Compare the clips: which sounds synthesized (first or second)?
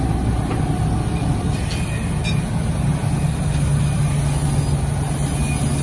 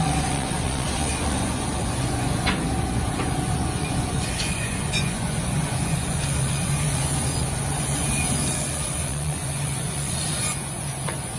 second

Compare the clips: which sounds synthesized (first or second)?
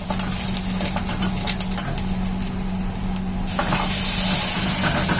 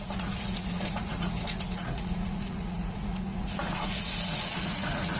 second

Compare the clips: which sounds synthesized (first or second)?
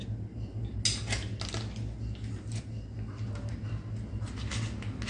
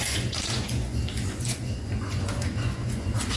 second